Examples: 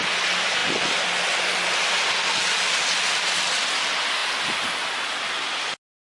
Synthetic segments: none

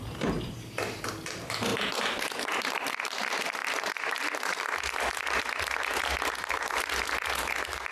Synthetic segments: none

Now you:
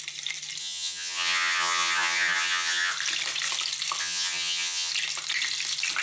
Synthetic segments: 0.6-2.9 (vocoder, HiFi-GAN); 4.0-4.9

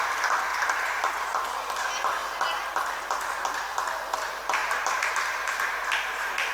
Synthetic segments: 0.5-1.2 (vocoder, BigVGAN v2); 4.6-5.9